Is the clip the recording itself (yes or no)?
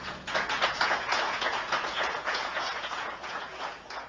no